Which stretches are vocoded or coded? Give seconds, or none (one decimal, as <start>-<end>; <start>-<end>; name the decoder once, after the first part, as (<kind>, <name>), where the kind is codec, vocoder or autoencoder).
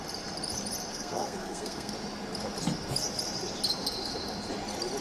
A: 0.9-1.9 (codec, SNAC)